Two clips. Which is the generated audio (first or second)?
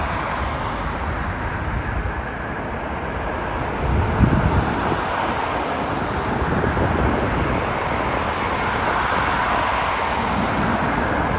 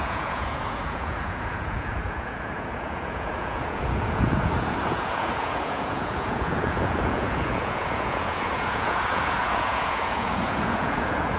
second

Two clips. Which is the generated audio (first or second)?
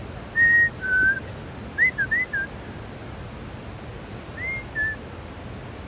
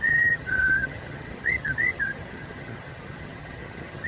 second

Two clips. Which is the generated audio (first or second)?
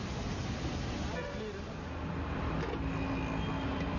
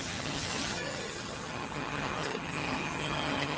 second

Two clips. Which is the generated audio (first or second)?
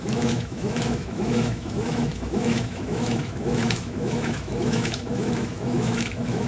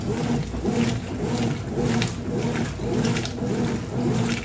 first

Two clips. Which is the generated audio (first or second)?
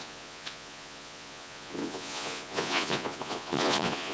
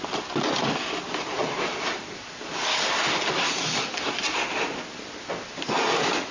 first